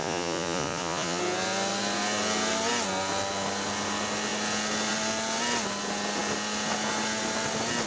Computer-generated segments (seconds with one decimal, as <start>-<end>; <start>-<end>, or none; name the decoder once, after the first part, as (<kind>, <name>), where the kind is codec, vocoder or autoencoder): 0.0-1.2 (vocoder, Vocos)